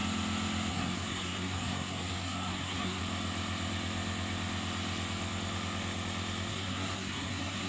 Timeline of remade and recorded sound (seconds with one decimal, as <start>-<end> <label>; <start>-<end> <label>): 0.0-0.7 recorded; 0.7-3.0 remade; 3.0-6.5 recorded; 6.5-7.7 remade